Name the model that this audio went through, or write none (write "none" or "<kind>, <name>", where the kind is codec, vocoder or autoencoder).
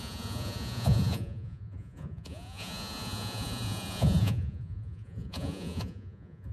vocoder, Vocos